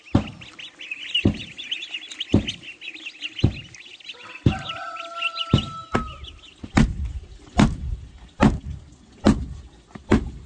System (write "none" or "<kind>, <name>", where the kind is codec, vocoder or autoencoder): none